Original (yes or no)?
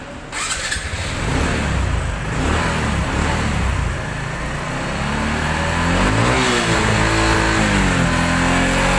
yes